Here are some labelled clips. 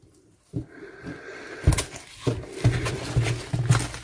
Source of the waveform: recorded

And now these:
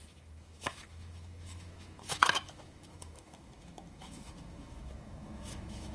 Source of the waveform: remade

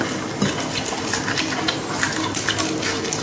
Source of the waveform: recorded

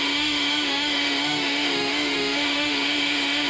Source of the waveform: remade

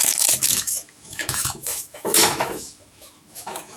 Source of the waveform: remade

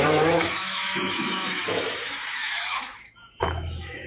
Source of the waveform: remade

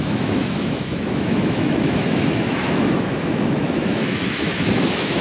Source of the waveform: remade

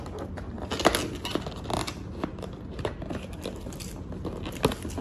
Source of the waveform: recorded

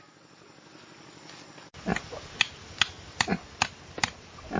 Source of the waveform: recorded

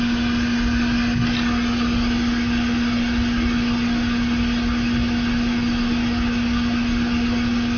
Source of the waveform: recorded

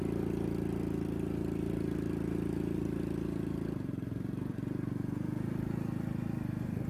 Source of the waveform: recorded